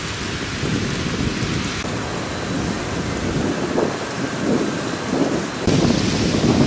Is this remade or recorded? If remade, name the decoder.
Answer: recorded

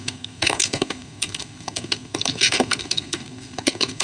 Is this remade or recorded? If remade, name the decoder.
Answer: remade, codec, SNAC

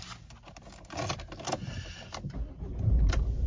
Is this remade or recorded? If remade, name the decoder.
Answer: recorded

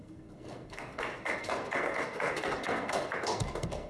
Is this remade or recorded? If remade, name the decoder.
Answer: remade, codec, SNAC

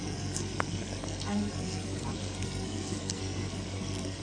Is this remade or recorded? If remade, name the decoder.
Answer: remade, codec, SNAC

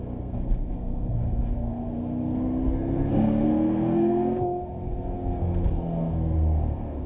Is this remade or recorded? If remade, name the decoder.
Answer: remade, codec, SNAC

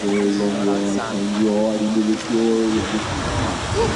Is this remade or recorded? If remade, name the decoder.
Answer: recorded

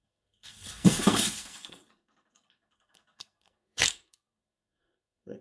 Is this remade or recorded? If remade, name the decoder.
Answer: remade, codec, SNAC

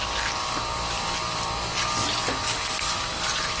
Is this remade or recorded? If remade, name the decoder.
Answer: recorded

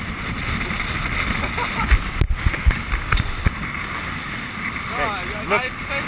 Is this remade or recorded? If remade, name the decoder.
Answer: recorded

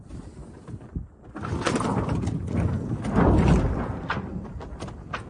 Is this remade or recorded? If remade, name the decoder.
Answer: recorded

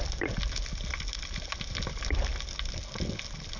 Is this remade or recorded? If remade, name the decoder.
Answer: recorded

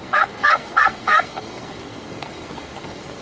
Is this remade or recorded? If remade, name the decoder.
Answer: remade, codec, SNAC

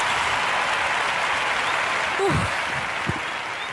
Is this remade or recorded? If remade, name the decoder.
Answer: recorded